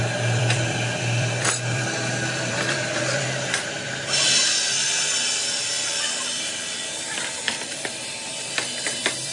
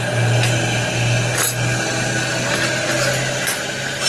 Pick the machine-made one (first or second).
first